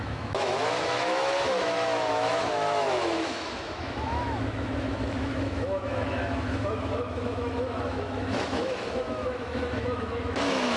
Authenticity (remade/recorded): remade